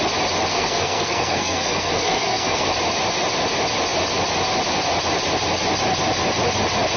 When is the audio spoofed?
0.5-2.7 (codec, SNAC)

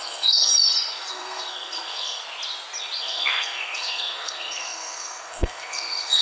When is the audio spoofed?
0.0-0.5 (codec, SNAC); 1.1-2.2; 3.0-6.2

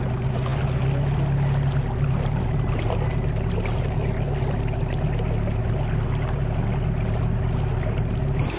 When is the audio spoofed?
none

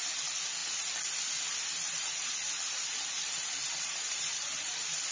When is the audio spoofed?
none

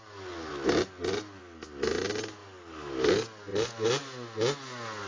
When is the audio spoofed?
none

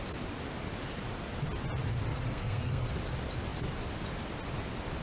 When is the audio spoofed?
2.1-2.9 (codec, SNAC)

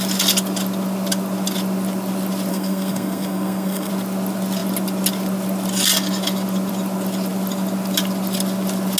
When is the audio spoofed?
2.5-3.9 (codec, SNAC)